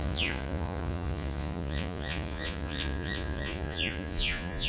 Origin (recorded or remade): remade